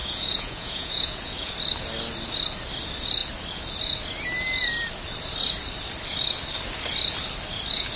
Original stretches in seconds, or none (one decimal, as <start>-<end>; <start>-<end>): 1.5-8.0

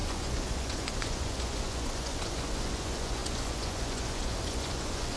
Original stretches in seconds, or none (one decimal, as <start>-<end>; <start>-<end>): none

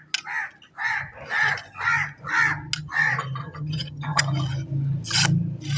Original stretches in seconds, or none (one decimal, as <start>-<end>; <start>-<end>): 0.0-3.4; 4.2-5.8

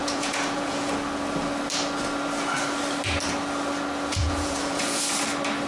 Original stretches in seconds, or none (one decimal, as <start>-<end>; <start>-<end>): 0.9-4.1; 5.0-5.7

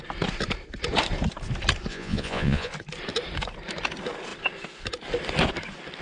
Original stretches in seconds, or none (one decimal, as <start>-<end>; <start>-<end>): 0.0-1.9; 2.7-6.0

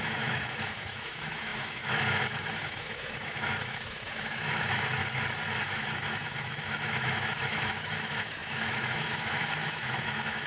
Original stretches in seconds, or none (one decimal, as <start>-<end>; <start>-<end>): 5.0-5.6

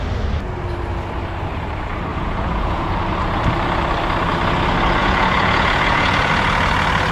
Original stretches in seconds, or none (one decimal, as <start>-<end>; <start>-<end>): 0.0-2.1; 3.0-5.0; 6.3-7.1

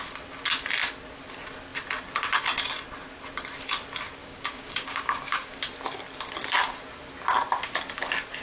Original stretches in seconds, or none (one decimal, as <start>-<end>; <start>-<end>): 0.0-4.2; 5.6-8.4